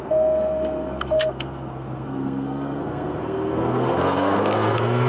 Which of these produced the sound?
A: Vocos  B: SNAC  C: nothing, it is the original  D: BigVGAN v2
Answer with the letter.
B